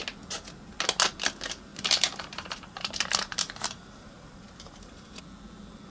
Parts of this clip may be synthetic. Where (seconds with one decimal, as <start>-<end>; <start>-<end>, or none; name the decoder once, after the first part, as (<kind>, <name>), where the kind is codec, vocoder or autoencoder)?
1.7-5.2 (vocoder, BigVGAN v2)